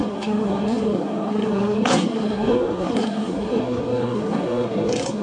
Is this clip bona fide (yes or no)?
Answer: no